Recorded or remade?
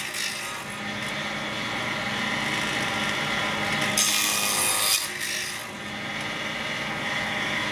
recorded